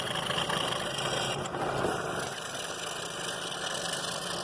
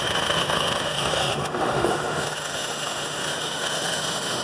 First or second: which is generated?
second